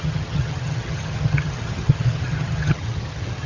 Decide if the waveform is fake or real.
fake